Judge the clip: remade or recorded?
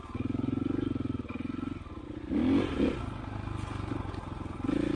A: recorded